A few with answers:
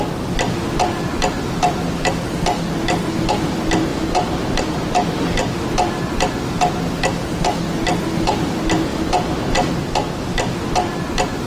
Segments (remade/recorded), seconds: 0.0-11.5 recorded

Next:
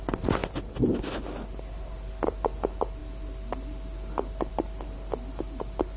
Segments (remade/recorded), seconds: 0.0-6.0 recorded

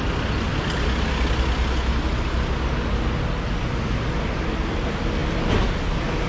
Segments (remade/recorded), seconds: 0.0-6.3 recorded

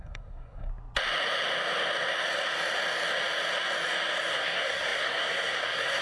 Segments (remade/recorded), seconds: 0.0-0.7 remade; 0.7-4.3 recorded; 4.3-6.0 remade

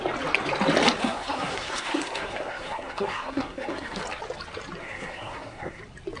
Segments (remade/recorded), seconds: 0.0-1.0 recorded; 1.0-4.0 remade; 4.0-4.8 recorded; 4.8-5.8 remade; 5.8-6.2 recorded